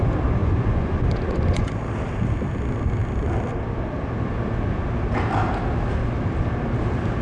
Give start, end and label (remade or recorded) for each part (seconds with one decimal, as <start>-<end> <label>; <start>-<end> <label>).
0.0-0.4 recorded; 0.4-1.8 remade; 1.8-7.2 recorded

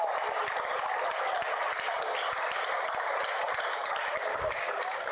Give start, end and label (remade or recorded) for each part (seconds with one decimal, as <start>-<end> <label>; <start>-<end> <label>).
0.0-4.3 recorded; 4.3-5.1 remade